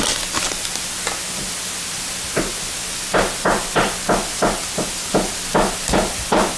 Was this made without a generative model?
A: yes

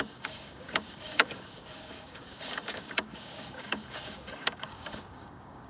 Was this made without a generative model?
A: no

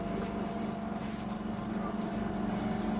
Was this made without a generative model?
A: yes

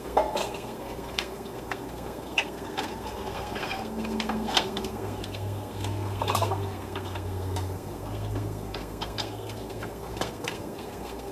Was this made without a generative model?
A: no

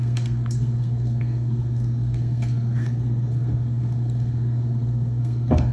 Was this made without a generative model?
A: no